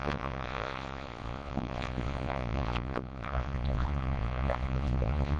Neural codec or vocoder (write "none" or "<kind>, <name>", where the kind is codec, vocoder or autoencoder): vocoder, Vocos